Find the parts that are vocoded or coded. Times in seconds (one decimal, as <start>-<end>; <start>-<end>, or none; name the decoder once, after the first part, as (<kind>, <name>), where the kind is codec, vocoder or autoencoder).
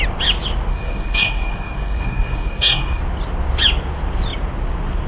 0.7-3.0 (codec, SNAC)